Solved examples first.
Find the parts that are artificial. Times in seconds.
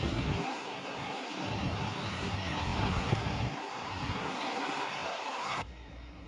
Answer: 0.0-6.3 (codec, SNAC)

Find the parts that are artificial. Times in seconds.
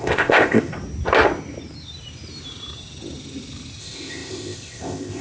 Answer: 0.0-0.7 (codec, ZipCodec); 3.8-5.2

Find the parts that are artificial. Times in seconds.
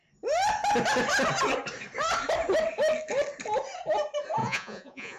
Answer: 4.4-5.2 (vocoder, Vocos)